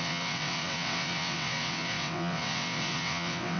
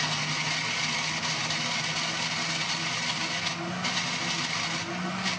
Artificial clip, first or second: first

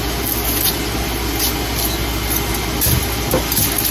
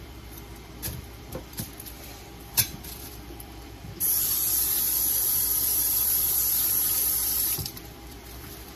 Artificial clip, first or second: second